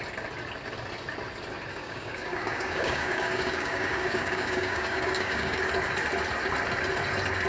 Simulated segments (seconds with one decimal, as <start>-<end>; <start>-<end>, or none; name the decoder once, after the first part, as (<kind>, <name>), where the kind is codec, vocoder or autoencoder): 1.7-5.7 (codec, DAC)